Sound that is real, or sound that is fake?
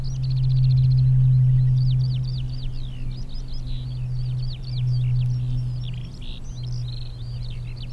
real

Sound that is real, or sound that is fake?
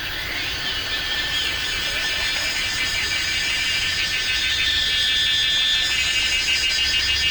real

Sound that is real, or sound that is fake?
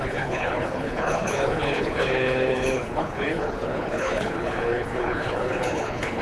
fake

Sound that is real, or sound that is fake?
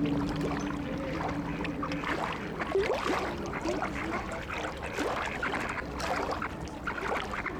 real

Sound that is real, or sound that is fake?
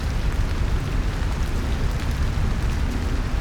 real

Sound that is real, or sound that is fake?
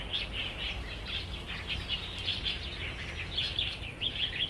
real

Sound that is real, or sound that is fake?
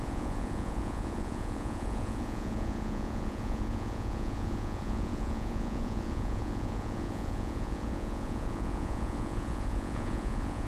fake